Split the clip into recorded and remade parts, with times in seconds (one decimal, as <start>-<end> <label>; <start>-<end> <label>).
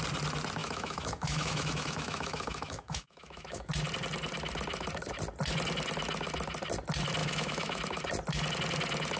0.0-0.6 recorded; 0.6-3.7 remade; 3.7-7.2 recorded; 7.2-7.8 remade; 7.8-9.2 recorded